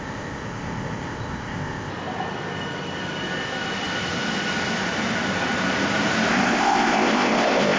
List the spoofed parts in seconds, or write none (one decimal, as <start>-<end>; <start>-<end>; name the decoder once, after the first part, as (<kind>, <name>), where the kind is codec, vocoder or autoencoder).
0.0-1.9 (codec, ZipCodec); 6.3-7.8